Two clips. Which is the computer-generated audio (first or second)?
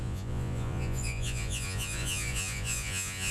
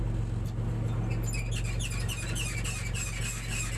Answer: first